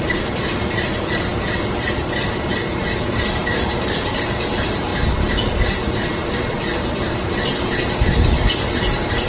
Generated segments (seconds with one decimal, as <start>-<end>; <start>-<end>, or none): 0.0-9.3